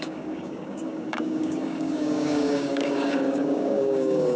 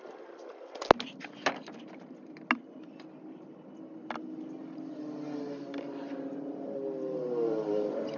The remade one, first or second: first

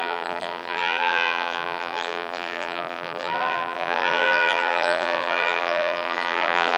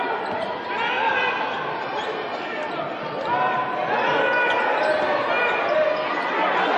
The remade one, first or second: first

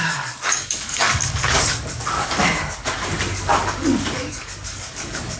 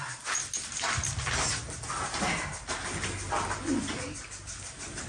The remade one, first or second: first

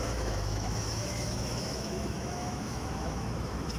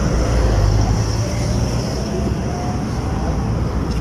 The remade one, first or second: first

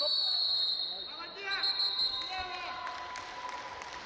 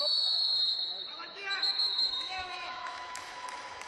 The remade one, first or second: second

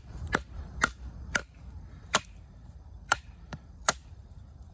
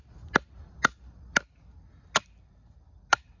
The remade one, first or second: first